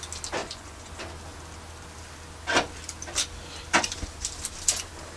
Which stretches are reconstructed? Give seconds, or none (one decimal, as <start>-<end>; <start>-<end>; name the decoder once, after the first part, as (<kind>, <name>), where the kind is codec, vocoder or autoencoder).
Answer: 0.4-0.9 (vocoder, Vocos)